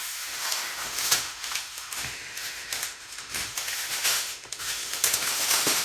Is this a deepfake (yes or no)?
yes